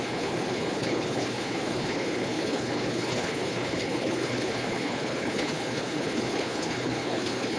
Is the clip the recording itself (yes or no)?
no